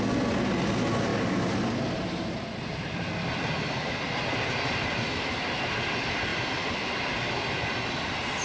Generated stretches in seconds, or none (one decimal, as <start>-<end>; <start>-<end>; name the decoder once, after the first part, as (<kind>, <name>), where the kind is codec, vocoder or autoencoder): 6.3-7.1 (vocoder, BigVGAN v2)